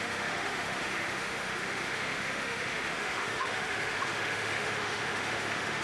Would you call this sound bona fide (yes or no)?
no